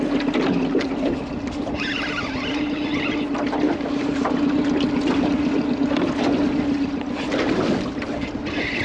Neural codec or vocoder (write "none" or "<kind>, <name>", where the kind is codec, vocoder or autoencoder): none